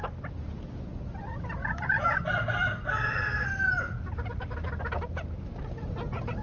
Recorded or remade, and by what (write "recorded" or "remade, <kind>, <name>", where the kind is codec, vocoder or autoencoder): recorded